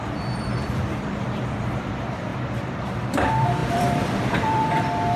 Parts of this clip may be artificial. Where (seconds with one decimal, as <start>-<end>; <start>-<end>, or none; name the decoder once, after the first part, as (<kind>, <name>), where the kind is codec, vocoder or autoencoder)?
0.0-5.2 (vocoder, BigVGAN v2)